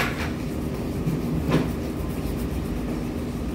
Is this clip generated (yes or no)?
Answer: no